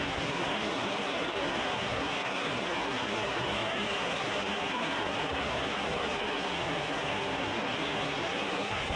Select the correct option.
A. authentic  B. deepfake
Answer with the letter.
B